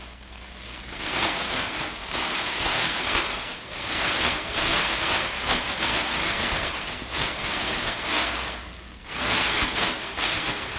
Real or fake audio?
fake